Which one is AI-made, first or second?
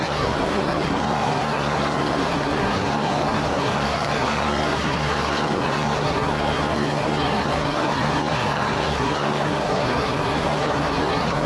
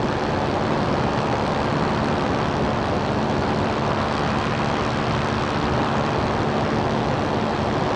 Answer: first